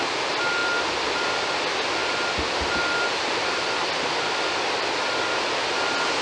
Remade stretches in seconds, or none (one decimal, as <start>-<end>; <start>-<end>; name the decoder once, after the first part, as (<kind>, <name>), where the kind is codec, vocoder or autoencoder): none